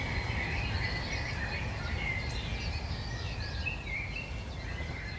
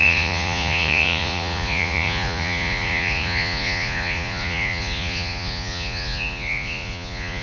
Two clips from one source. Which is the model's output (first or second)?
second